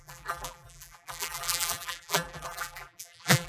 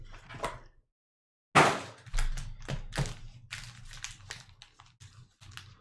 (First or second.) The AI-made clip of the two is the first